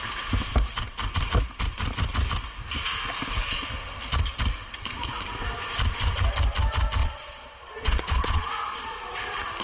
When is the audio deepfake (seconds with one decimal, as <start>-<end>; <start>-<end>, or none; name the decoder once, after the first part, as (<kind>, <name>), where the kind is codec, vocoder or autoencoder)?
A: 7.0-8.5 (vocoder, Vocos)